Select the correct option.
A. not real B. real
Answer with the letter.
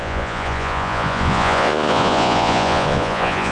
A